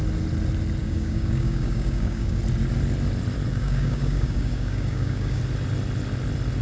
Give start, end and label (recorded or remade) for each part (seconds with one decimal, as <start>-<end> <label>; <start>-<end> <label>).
0.0-0.8 recorded; 0.8-2.4 remade; 2.4-3.5 recorded; 3.5-5.4 remade; 5.4-6.6 recorded